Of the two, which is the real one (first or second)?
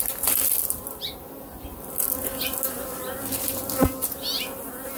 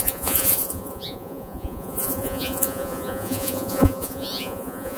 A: first